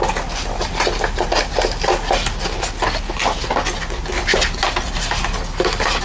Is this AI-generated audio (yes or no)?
no